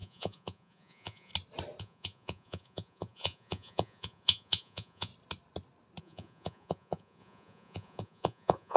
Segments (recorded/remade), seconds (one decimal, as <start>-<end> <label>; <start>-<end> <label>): 0.0-1.3 remade; 1.3-1.8 recorded; 1.8-5.1 remade; 5.1-6.0 recorded; 6.0-8.8 remade